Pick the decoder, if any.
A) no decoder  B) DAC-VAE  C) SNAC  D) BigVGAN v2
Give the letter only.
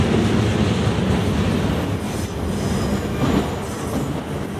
A